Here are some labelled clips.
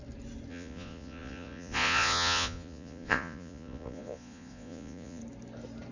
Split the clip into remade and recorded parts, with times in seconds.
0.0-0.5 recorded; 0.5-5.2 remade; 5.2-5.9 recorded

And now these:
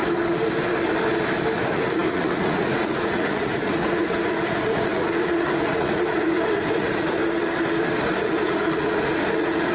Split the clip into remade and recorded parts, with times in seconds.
0.0-1.6 recorded; 1.6-7.2 remade; 7.2-8.0 recorded; 8.0-9.7 remade

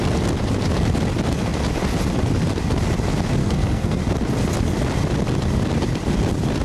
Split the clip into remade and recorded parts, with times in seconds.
0.0-3.4 recorded; 3.4-4.0 remade; 4.0-6.6 recorded

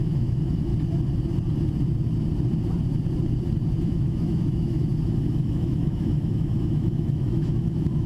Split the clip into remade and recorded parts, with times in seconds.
0.0-0.7 remade; 0.7-3.8 recorded; 3.8-8.1 remade